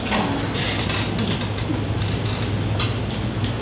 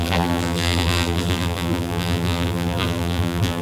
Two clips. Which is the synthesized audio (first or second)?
second